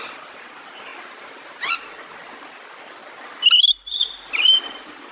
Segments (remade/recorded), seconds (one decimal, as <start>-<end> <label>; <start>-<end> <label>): 0.0-5.1 recorded